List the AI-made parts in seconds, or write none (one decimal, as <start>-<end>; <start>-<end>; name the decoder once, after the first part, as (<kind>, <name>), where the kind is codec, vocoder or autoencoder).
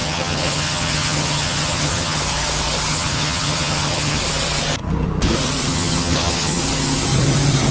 0.0-2.2 (vocoder, HiFi-GAN); 2.9-4.2; 5.7-6.6